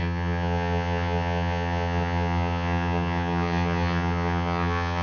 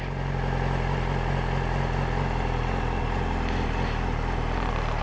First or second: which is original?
second